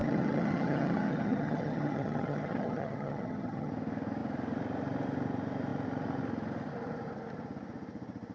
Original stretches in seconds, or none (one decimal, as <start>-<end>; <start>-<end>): 3.7-8.3